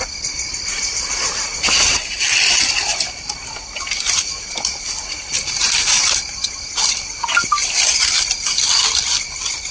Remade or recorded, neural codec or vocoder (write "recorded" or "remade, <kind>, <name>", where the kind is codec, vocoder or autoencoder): recorded